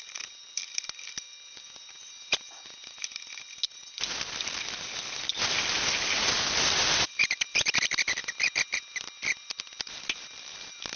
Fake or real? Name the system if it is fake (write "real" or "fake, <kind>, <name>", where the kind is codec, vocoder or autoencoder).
real